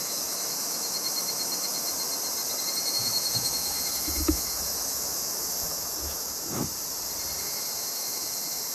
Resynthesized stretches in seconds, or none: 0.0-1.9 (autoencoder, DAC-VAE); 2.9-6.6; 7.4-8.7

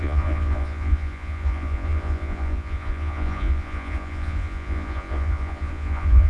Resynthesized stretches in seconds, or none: 0.0-6.3 (vocoder, Vocos)

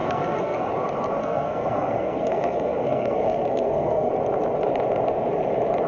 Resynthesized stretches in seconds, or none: 0.0-0.7 (codec, SNAC); 1.2-4.1